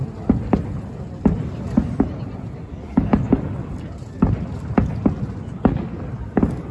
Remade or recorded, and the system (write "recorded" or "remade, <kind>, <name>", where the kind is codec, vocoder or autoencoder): recorded